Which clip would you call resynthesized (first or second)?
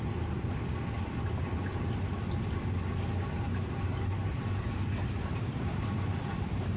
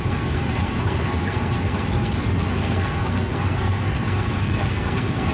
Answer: second